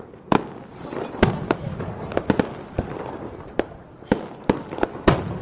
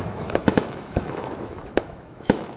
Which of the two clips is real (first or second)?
first